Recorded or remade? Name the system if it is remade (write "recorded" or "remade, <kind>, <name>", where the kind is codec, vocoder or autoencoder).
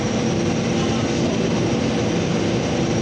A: recorded